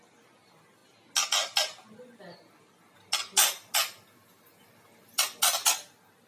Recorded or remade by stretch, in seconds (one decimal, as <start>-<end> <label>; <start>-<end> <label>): 0.0-6.3 recorded